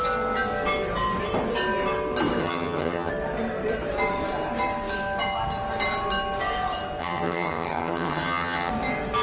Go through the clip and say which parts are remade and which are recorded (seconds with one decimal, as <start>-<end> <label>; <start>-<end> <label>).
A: 0.0-2.4 recorded; 2.4-3.1 remade; 3.1-7.0 recorded; 7.0-8.7 remade; 8.7-9.2 recorded